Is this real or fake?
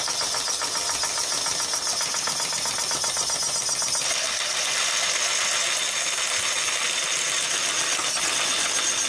real